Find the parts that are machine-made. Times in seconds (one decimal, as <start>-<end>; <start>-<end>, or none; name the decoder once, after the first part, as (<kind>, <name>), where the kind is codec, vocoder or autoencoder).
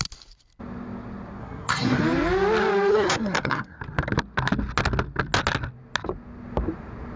1.4-2.0 (codec, SNAC); 2.9-3.8